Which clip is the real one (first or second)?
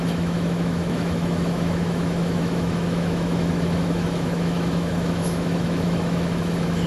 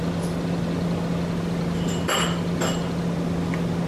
second